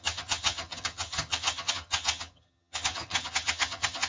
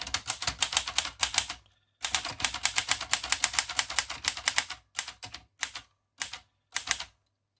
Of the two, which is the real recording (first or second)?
second